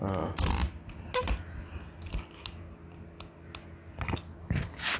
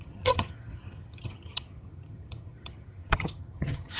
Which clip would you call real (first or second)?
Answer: first